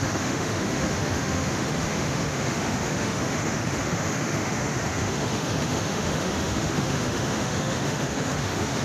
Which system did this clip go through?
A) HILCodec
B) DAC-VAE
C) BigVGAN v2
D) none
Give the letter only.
B